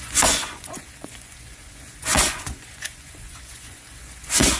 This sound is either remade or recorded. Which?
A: remade